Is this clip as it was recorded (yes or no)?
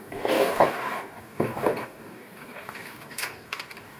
no